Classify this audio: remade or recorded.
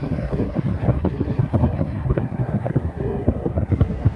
remade